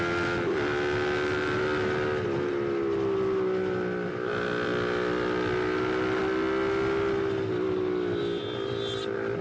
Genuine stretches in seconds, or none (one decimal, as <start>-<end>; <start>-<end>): 0.0-9.4